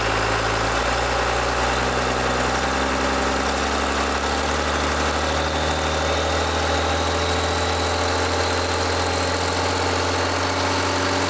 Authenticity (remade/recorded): recorded